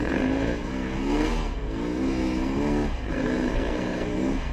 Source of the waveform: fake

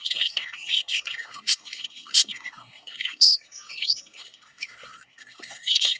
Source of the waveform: fake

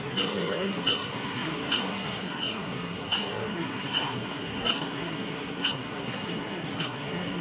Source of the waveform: fake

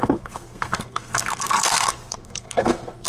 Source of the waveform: fake